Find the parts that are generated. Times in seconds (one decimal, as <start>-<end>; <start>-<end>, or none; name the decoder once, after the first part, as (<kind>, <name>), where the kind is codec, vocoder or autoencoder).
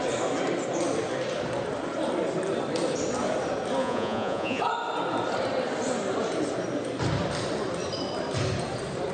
3.8-4.6 (vocoder, Vocos)